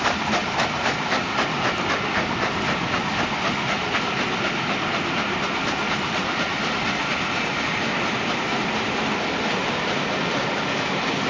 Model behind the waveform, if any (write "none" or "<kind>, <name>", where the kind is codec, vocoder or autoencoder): none